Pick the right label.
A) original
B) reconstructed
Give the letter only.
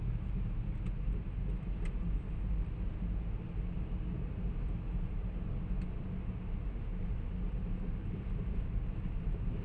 A